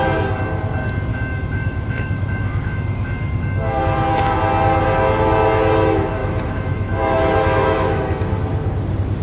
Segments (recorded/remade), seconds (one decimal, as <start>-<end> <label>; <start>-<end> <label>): 0.0-1.1 recorded; 1.1-3.8 remade; 3.8-6.2 recorded; 6.2-8.0 remade; 8.0-9.2 recorded